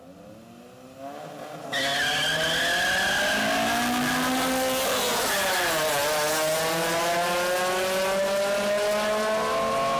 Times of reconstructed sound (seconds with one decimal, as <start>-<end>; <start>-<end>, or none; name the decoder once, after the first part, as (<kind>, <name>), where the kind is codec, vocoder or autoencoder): none